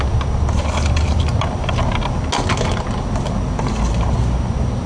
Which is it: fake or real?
real